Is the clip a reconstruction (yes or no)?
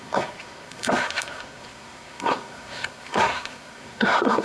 yes